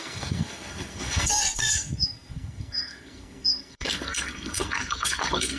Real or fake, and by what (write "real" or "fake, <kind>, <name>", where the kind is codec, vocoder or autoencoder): fake, codec, SNAC